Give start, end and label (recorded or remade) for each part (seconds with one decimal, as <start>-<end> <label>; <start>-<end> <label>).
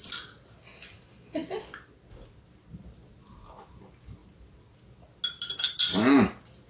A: 0.0-6.7 recorded